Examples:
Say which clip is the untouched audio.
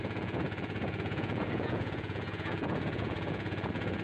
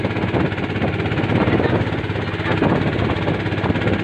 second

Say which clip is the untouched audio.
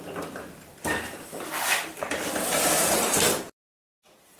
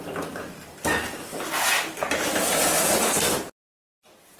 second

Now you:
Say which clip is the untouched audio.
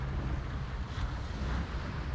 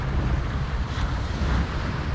first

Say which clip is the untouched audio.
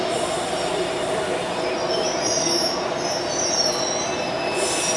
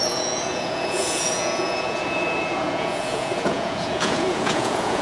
first